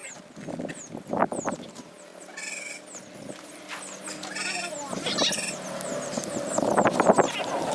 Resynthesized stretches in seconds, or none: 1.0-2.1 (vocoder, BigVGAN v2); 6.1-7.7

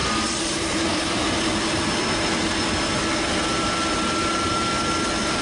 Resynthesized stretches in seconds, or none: 0.0-1.4 (vocoder, BigVGAN v2); 2.0-3.0

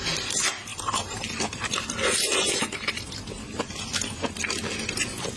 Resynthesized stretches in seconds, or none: 0.7-3.9 (vocoder, BigVGAN v2)

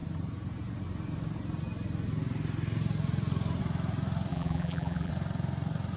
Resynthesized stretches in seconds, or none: 4.3-5.1 (vocoder, BigVGAN v2)

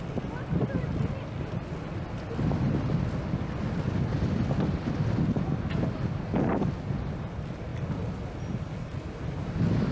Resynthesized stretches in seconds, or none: none

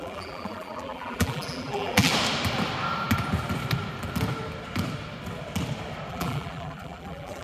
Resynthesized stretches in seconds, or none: 0.0-2.1 (vocoder, BigVGAN v2); 6.1-7.4